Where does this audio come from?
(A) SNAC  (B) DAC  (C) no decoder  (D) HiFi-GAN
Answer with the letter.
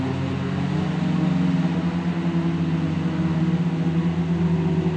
C